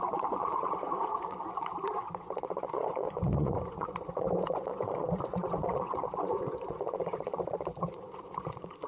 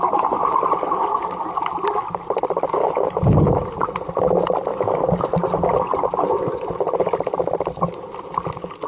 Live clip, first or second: second